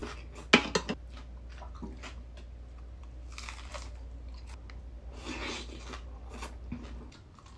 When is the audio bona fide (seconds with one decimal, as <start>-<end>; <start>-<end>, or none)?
0.0-7.6